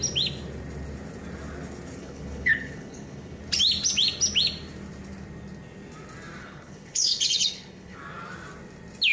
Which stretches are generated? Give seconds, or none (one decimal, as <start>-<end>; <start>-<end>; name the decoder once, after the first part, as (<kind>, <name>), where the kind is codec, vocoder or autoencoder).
2.0-3.4 (codec, HILCodec); 6.4-8.0